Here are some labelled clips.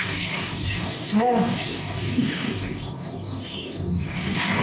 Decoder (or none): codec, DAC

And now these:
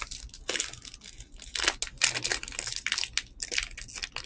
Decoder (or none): none